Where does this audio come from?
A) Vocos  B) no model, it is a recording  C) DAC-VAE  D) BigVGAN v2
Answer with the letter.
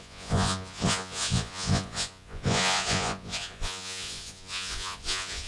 A